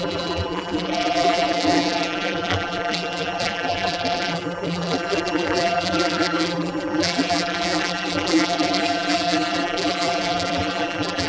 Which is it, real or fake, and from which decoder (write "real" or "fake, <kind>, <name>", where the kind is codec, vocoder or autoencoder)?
fake, vocoder, BigVGAN v2